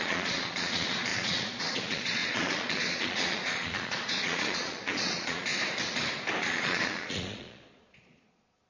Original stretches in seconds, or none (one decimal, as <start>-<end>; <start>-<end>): 5.5-6.4